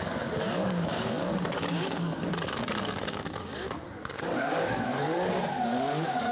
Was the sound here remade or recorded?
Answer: remade